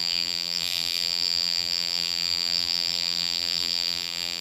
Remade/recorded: remade